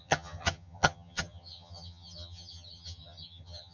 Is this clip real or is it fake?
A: fake